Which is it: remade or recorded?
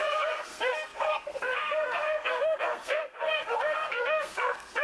remade